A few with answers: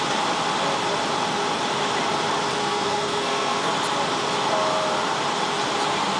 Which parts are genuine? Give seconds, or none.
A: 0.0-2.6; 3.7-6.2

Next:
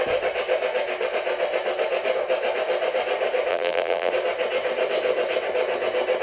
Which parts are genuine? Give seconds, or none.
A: 0.0-3.5; 4.1-6.2

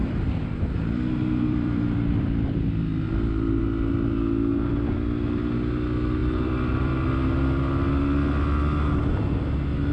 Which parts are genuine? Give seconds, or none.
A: 3.6-6.2; 6.9-9.9

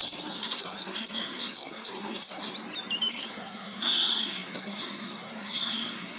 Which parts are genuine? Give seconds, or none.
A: 2.5-3.1

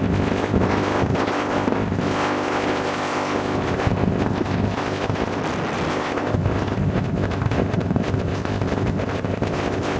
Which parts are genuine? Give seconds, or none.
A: 5.4-5.9

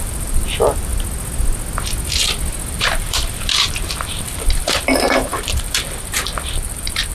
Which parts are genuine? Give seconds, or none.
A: 0.9-2.7

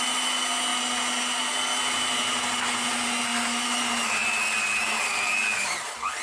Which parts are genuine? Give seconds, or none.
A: 0.0-6.2

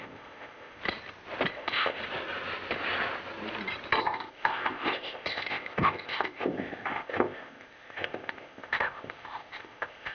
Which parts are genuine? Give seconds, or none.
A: 0.8-1.5; 2.0-4.0